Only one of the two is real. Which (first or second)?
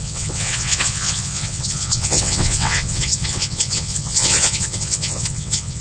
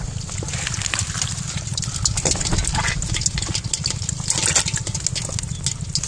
second